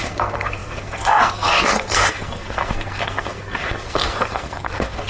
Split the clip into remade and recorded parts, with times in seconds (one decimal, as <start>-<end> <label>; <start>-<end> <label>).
0.0-5.1 remade